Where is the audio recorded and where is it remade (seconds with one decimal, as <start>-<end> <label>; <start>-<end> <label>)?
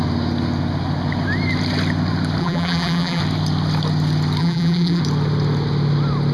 0.0-2.4 recorded; 2.4-3.2 remade; 3.2-4.4 recorded; 4.4-5.0 remade; 5.0-6.3 recorded